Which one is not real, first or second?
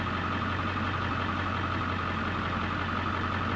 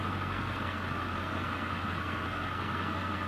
second